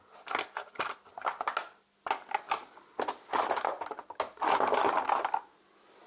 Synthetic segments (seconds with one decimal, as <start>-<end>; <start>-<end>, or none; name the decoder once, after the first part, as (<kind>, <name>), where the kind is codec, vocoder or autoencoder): none